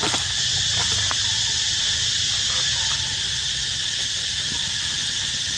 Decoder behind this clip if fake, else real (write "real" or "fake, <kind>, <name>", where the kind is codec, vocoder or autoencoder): fake, vocoder, BigVGAN v2